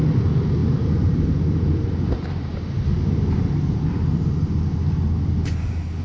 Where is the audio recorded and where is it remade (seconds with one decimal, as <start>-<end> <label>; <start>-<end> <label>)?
0.0-0.6 recorded; 0.6-4.2 remade; 4.2-6.0 recorded